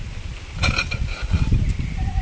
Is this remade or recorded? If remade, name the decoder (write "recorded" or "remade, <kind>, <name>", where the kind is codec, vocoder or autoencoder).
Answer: recorded